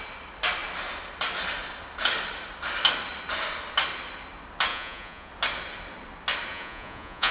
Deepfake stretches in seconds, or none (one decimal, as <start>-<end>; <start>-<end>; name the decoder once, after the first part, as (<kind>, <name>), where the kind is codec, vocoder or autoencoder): 4.7-5.3 (vocoder, Vocos); 6.5-7.3

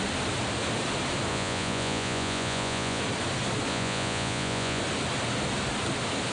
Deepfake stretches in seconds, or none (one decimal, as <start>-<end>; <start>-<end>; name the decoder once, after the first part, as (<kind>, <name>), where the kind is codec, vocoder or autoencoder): 1.3-3.0 (vocoder, Vocos); 3.7-4.8

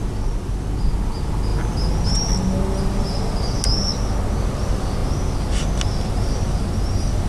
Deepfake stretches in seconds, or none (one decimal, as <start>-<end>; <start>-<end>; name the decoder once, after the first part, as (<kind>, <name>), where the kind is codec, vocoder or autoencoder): none

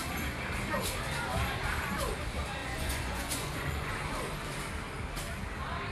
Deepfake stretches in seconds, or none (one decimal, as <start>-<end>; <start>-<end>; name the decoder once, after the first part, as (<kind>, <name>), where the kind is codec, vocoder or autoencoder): 2.6-3.9 (vocoder, Vocos)

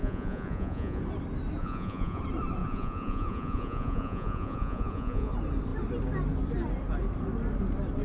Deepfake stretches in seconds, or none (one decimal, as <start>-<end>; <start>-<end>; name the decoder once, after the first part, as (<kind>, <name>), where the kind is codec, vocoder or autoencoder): 0.0-1.0 (vocoder, Vocos); 1.6-2.2; 2.6-5.3

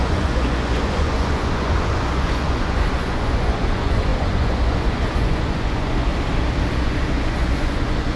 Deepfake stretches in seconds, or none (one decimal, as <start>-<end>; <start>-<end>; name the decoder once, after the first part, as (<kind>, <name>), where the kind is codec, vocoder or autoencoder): 0.0-6.1 (vocoder, Vocos); 6.7-8.2

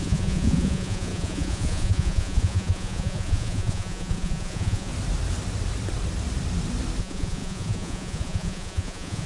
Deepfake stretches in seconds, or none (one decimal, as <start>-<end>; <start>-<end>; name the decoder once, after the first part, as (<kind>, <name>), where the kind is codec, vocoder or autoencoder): 0.0-4.9 (vocoder, Vocos); 7.0-9.3